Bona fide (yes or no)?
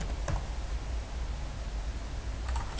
yes